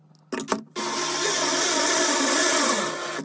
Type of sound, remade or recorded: recorded